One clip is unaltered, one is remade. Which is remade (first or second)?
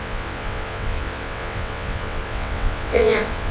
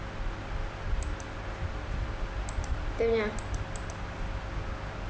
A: first